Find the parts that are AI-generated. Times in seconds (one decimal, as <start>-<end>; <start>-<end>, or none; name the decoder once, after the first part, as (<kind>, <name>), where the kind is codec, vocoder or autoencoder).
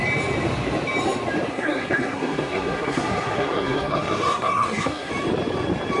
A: 1.5-5.1 (codec, SNAC)